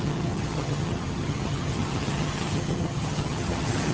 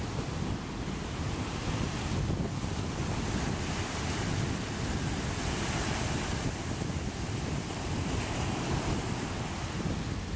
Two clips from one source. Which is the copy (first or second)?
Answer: first